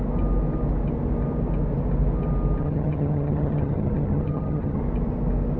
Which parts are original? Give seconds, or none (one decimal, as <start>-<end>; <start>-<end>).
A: 0.0-2.6; 4.8-5.6